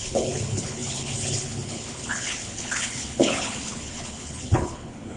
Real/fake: fake